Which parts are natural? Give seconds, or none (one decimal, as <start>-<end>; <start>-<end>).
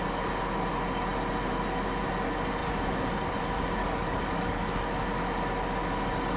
0.0-3.8; 4.8-6.4